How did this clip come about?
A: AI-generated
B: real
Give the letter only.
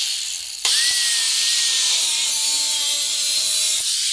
B